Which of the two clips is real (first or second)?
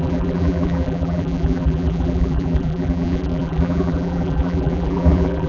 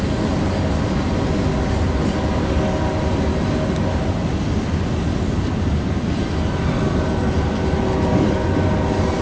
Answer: second